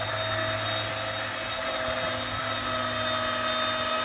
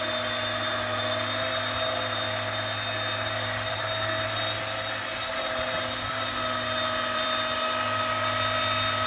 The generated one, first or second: second